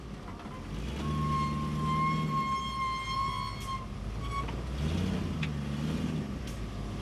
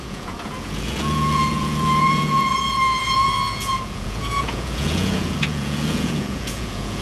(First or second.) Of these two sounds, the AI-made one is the second